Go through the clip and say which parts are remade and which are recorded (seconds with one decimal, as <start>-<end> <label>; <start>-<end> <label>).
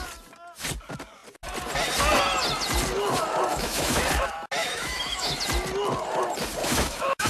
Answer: 0.0-3.5 recorded; 3.5-4.0 remade; 4.0-4.6 recorded; 4.6-5.4 remade; 5.4-6.6 recorded; 6.6-7.3 remade